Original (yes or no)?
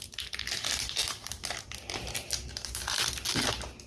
yes